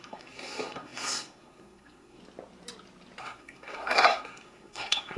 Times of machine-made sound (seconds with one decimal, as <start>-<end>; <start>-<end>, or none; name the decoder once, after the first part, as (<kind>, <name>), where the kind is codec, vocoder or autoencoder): 0.0-2.2 (codec, SNAC); 3.2-5.2